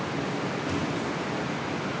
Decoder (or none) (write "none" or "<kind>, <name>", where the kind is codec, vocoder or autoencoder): none